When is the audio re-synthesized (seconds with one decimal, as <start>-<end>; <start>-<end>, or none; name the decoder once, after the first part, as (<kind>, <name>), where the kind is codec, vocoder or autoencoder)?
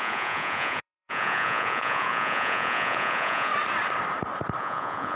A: 0.0-3.5 (vocoder, Vocos); 4.6-5.2